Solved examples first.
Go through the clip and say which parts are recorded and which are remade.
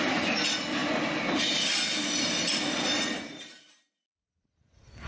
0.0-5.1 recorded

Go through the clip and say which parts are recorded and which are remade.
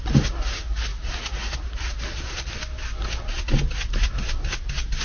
0.0-5.0 recorded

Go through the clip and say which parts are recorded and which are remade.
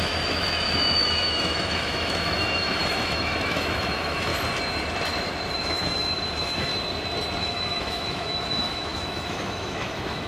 0.0-4.3 remade; 4.3-5.5 recorded; 5.5-6.7 remade; 6.7-7.4 recorded; 7.4-10.3 remade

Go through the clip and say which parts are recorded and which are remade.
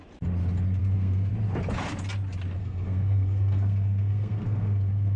0.0-0.8 recorded; 0.8-1.3 remade; 1.3-2.6 recorded; 2.6-5.2 remade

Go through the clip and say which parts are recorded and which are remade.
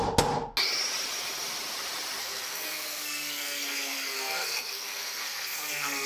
0.0-2.2 recorded; 2.2-6.1 remade